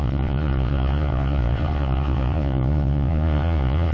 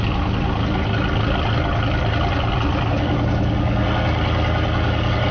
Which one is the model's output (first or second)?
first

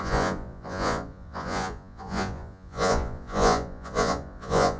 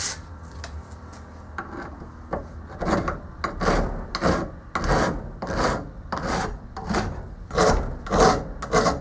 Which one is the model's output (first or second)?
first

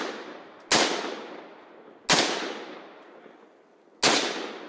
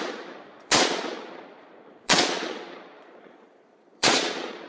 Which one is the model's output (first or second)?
second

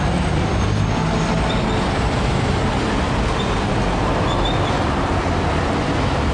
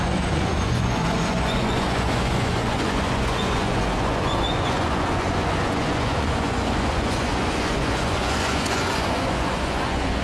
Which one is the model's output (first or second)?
second